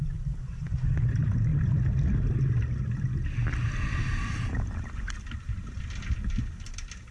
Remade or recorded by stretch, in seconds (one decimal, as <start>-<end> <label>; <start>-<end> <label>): 0.0-7.1 recorded